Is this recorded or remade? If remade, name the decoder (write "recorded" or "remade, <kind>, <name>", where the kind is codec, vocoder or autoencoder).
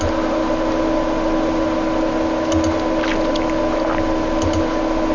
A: recorded